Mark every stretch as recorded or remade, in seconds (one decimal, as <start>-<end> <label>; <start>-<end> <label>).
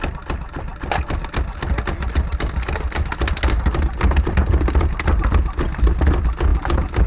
0.0-7.1 recorded